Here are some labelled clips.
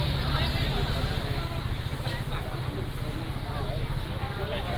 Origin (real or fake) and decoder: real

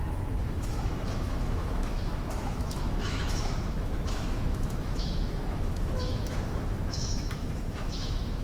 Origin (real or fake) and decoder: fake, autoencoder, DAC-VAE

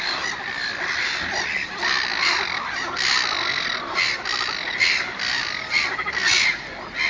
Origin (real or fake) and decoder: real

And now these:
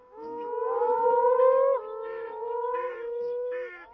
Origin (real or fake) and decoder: fake, autoencoder, DAC-VAE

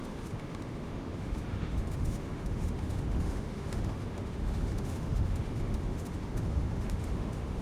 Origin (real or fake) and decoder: fake, autoencoder, DAC-VAE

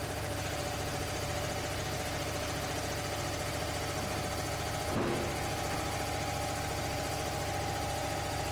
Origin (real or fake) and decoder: real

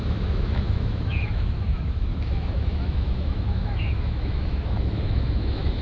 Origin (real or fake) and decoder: fake, autoencoder, DAC-VAE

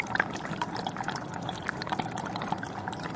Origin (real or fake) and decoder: real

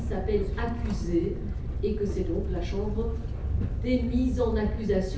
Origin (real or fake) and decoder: real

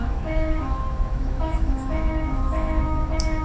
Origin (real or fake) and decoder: fake, autoencoder, DAC-VAE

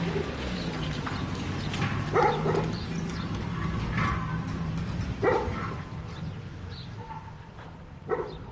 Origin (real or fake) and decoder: real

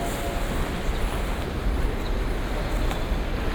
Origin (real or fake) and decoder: real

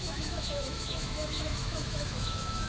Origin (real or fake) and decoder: fake, autoencoder, DAC-VAE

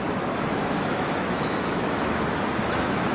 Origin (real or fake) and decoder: fake, autoencoder, DAC-VAE